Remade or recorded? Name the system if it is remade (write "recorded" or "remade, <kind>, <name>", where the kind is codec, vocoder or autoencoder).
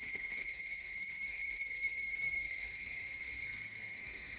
remade, codec, SNAC